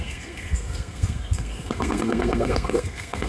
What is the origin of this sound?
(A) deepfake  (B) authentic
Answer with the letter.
A